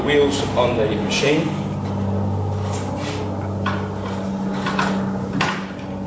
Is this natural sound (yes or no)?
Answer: yes